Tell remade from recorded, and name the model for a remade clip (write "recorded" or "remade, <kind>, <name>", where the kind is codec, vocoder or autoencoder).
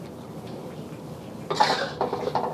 recorded